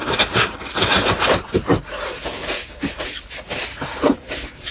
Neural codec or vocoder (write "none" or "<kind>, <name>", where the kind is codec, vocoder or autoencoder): vocoder, BigVGAN v2